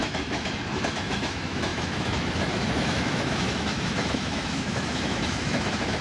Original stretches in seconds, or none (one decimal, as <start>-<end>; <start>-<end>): none

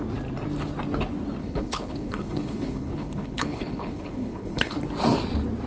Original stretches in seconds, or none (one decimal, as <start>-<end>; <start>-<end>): 0.0-1.4; 4.8-5.7

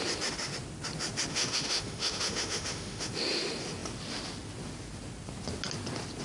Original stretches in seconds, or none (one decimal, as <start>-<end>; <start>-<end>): 0.0-1.3; 3.1-6.2

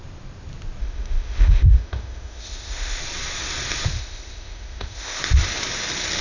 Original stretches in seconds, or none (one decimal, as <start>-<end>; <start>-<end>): 0.0-0.8; 3.0-3.9; 5.2-6.2